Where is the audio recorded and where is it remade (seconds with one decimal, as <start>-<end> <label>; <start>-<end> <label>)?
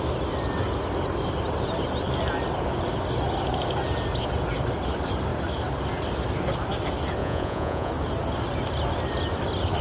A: 0.0-7.2 recorded; 7.2-7.9 remade; 7.9-9.8 recorded